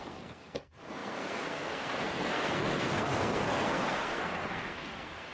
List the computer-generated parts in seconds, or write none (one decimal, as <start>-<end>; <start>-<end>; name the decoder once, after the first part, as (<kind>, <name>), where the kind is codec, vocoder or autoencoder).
0.0-5.3 (codec, SNAC)